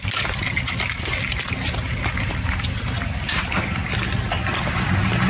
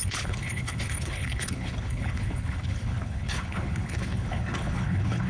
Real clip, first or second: first